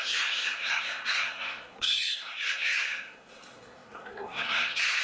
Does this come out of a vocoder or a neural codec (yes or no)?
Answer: yes